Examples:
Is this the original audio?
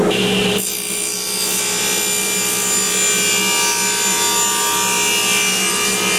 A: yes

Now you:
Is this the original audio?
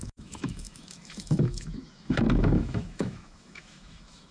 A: no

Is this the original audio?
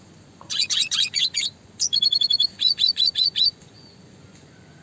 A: no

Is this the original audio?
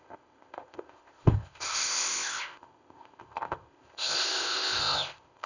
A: no